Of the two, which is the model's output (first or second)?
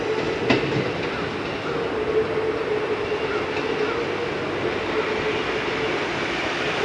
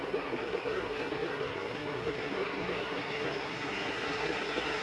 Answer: second